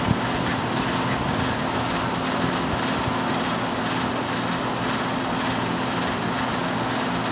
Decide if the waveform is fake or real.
real